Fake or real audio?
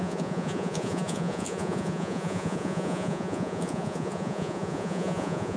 fake